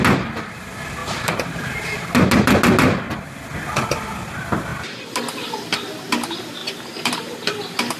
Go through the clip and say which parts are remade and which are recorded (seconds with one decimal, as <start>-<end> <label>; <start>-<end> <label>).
0.0-1.0 recorded; 1.0-2.0 remade; 2.0-6.6 recorded; 6.6-7.1 remade; 7.1-8.0 recorded